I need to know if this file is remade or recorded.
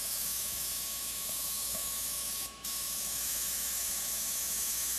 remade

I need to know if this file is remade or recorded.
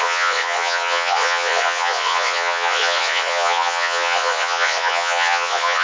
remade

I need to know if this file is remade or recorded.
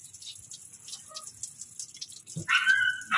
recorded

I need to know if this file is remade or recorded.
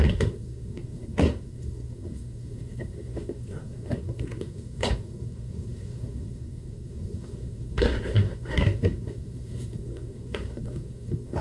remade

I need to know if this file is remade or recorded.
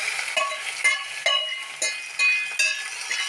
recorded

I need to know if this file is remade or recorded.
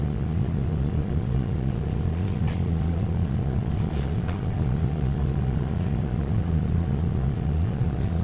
remade